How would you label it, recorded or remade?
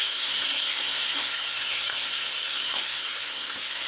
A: remade